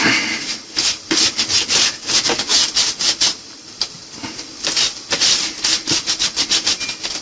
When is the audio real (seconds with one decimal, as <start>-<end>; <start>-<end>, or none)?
0.0-7.2